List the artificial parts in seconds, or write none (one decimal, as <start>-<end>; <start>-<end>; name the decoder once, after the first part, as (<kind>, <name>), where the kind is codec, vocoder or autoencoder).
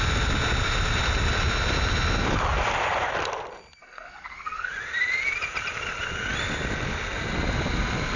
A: 3.8-4.7 (codec, SNAC)